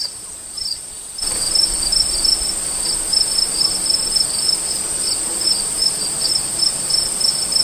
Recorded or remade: recorded